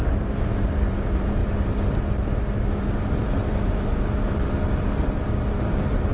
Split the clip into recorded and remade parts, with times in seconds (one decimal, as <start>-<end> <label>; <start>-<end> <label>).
0.0-1.4 remade; 1.4-2.8 recorded; 2.8-3.9 remade; 3.9-6.1 recorded